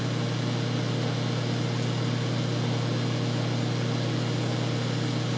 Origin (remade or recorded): recorded